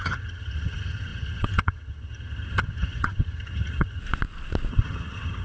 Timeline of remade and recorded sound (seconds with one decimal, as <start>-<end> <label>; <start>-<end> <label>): 0.0-4.0 remade; 4.0-4.7 recorded; 4.7-5.4 remade